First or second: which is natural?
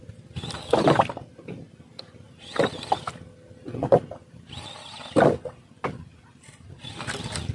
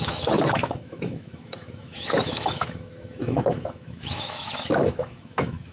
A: first